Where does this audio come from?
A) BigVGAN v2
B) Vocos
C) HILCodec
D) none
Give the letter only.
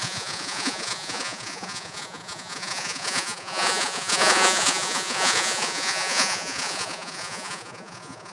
B